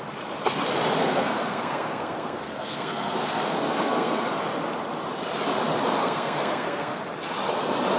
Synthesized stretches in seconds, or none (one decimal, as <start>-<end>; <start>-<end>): 1.0-4.4; 6.0-7.0